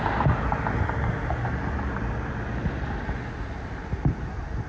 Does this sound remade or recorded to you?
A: recorded